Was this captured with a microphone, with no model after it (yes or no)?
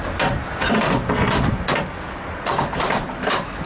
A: yes